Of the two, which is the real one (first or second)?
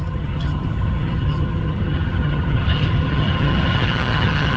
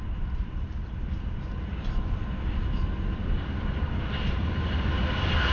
second